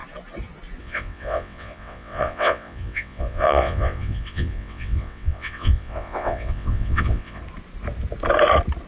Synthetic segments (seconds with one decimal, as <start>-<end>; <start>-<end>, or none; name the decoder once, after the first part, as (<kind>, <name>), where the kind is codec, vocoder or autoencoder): 0.8-7.4 (vocoder, WaveNeXt)